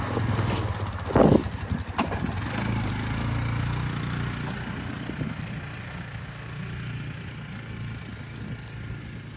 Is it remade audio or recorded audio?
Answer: recorded